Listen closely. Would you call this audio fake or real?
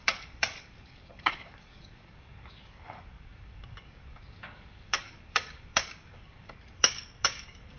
fake